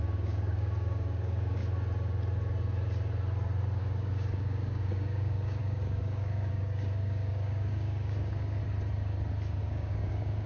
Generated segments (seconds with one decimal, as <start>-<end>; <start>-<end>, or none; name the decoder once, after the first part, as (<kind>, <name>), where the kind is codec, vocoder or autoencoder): 0.0-1.6 (codec, DAC); 3.8-8.6; 9.6-10.5